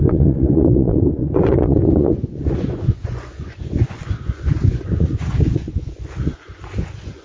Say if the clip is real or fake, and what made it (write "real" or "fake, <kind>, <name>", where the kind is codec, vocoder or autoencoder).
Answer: fake, vocoder, Vocos